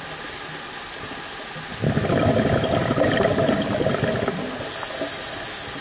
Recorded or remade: recorded